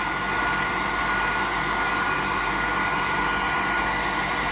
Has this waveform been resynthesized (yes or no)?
no